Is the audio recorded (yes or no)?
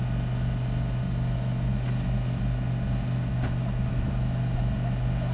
yes